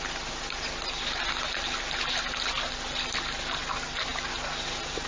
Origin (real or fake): real